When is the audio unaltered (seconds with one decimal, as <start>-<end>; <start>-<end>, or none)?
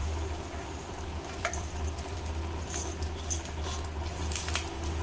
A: 2.3-5.0